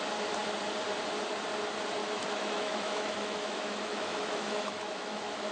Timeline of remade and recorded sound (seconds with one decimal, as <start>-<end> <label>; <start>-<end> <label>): 0.0-2.0 recorded; 2.0-5.5 remade

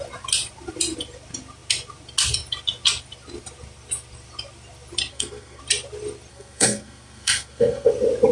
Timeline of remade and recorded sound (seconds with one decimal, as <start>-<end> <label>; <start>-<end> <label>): 0.0-5.1 recorded; 5.1-5.6 remade; 5.6-6.3 recorded; 6.3-7.9 remade; 7.9-8.3 recorded

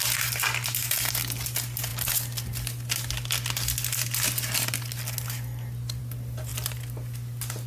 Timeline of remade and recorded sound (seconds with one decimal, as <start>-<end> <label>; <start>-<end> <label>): 0.0-7.7 recorded